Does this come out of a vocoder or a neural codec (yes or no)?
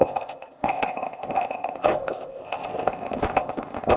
yes